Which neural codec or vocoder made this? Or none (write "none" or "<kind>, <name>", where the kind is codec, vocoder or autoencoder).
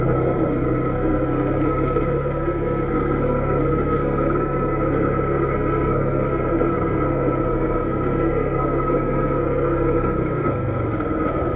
codec, SNAC